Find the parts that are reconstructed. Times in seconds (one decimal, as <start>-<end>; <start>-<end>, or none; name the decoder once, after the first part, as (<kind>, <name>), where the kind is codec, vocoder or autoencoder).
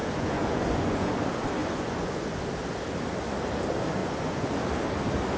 0.0-1.1 (vocoder, Vocos); 1.6-2.4; 4.0-4.5